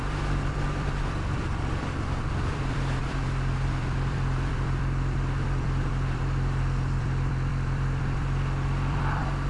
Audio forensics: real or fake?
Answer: fake